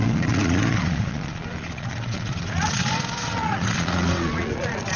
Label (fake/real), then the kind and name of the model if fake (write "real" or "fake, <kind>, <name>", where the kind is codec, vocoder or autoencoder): fake, vocoder, Vocos